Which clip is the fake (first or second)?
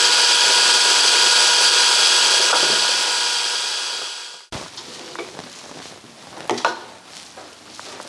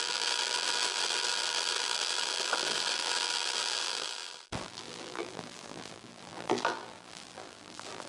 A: second